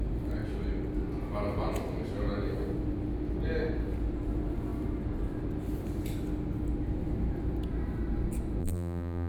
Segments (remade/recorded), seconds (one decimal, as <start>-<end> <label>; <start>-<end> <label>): 0.0-8.6 recorded; 8.6-9.3 remade

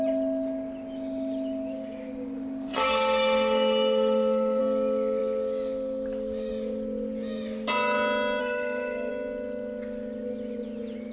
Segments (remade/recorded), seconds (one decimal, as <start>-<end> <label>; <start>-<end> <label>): 0.0-2.7 recorded; 2.7-4.6 remade; 4.6-8.4 recorded; 8.4-9.1 remade; 9.1-11.1 recorded

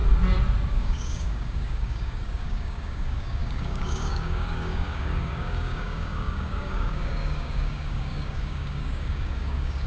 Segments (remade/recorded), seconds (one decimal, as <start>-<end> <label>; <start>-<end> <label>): 0.0-0.7 recorded; 0.7-9.9 remade

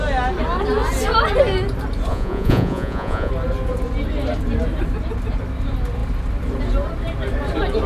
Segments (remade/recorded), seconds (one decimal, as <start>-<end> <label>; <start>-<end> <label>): 0.0-2.1 recorded; 2.1-3.3 remade; 3.3-7.9 recorded

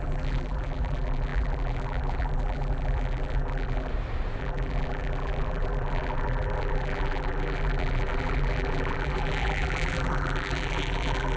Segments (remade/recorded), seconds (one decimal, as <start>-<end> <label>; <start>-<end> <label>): 0.0-3.9 remade; 3.9-4.4 recorded; 4.4-11.4 remade

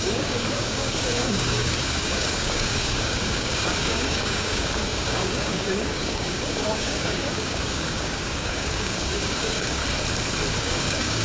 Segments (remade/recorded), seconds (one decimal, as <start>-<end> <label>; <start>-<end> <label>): 0.0-9.8 remade; 9.8-10.5 recorded; 10.5-11.2 remade